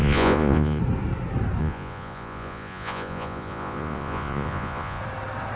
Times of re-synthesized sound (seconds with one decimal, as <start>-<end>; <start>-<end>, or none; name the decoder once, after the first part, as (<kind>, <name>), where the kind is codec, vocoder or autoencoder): 0.0-0.8 (vocoder, Vocos); 1.6-5.0

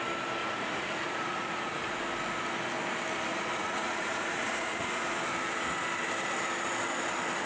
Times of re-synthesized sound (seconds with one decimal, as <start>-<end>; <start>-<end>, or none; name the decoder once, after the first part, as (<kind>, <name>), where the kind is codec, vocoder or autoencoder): 0.4-2.0 (vocoder, Vocos); 3.3-5.2

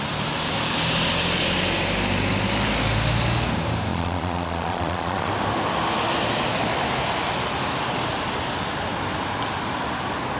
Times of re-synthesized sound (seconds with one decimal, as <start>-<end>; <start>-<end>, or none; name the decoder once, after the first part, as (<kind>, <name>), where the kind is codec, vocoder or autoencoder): 3.9-5.3 (vocoder, Vocos)

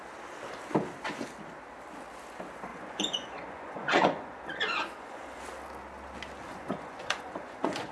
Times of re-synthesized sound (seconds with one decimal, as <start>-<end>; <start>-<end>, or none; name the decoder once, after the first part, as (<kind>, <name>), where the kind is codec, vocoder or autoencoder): 2.7-5.4 (vocoder, Vocos); 6.5-7.9

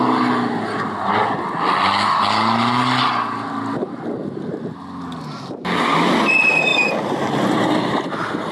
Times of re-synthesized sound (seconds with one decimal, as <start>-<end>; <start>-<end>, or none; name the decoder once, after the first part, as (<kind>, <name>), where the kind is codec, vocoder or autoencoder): none

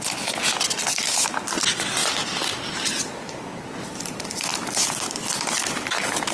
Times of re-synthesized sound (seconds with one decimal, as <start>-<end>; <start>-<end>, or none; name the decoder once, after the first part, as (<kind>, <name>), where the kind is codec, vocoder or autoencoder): none

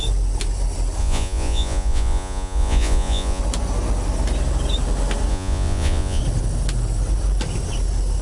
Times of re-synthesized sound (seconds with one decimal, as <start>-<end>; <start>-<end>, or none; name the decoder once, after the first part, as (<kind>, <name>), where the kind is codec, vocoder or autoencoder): 1.0-3.4 (vocoder, Vocos); 5.3-6.2